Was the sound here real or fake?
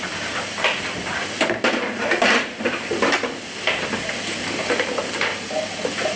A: real